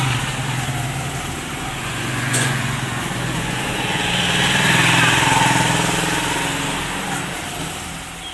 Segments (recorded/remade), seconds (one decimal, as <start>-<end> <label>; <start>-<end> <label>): 0.0-1.5 recorded; 1.5-4.1 remade; 4.1-8.3 recorded